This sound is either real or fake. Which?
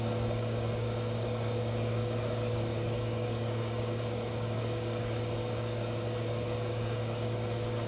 fake